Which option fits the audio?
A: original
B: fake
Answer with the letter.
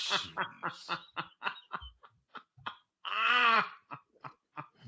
B